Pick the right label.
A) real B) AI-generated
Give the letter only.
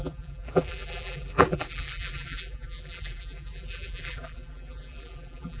B